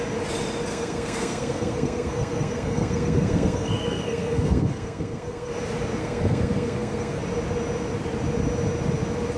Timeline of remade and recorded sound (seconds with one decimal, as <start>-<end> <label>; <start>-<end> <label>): 0.0-0.7 recorded; 0.7-5.5 remade; 5.5-6.0 recorded; 6.0-7.2 remade; 7.2-9.4 recorded